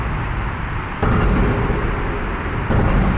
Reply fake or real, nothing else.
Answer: real